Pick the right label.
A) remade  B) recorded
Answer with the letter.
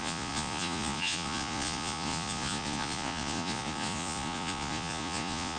A